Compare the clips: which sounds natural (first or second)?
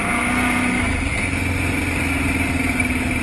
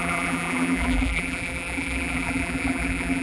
first